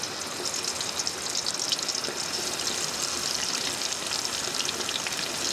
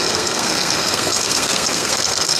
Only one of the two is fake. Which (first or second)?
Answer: second